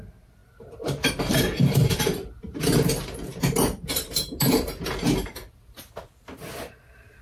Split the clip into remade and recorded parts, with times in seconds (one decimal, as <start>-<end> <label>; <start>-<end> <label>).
0.0-3.3 remade; 3.3-5.3 recorded; 5.3-7.2 remade